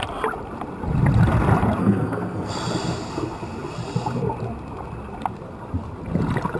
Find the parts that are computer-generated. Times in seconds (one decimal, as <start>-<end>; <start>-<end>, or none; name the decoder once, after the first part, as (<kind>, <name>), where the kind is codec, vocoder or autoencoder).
1.8-2.5 (codec, SNAC)